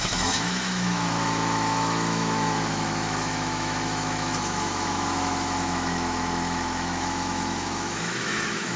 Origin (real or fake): fake